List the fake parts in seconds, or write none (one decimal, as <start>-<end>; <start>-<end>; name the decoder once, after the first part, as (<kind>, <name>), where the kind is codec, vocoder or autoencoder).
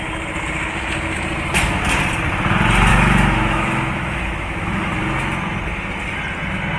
2.9-4.9 (autoencoder, DAC-VAE)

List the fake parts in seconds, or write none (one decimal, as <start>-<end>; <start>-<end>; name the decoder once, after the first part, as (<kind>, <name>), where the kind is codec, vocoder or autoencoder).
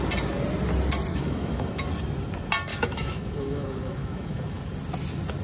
1.1-1.8 (autoencoder, DAC-VAE); 2.7-4.6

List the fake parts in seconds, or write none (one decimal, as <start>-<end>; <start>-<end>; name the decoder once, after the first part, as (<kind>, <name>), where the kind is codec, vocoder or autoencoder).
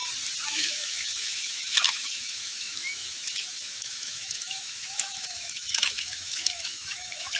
0.5-7.4 (autoencoder, DAC-VAE)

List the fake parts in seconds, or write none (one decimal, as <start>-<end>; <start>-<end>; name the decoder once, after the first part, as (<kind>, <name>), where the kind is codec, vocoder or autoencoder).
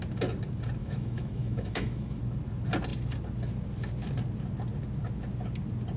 0.8-2.2 (autoencoder, DAC-VAE)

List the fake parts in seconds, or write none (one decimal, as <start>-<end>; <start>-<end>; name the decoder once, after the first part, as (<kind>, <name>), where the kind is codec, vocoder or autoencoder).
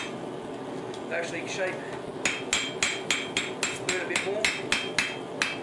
none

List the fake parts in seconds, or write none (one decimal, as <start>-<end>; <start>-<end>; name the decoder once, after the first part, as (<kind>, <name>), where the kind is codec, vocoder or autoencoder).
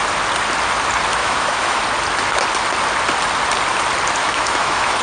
1.2-1.8 (autoencoder, DAC-VAE); 4.2-5.0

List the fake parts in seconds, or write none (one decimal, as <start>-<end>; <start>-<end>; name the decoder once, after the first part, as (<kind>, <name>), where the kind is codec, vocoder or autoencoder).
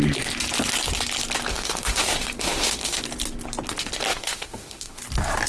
1.5-3.0 (autoencoder, DAC-VAE); 4.1-5.0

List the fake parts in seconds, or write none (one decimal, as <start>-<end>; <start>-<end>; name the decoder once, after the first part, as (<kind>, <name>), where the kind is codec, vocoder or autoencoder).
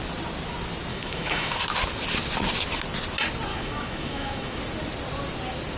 0.9-1.6 (autoencoder, DAC-VAE); 3.5-4.6